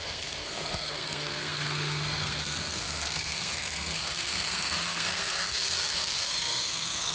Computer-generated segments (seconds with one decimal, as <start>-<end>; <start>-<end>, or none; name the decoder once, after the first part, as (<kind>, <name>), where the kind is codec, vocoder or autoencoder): 0.0-7.1 (codec, SNAC)